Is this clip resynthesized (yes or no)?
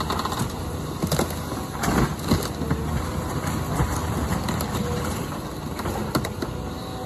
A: no